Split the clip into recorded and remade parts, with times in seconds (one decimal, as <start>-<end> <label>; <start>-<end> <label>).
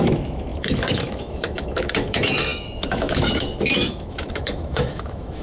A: 0.0-5.4 remade